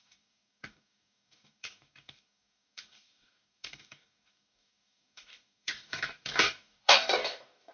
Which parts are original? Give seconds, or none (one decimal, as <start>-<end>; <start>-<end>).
none